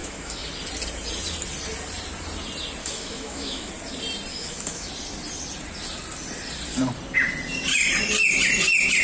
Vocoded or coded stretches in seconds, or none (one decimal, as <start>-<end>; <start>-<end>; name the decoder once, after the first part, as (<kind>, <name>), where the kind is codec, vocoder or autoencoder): 0.0-0.5 (autoencoder, DAC-VAE); 2.8-3.7; 4.3-4.9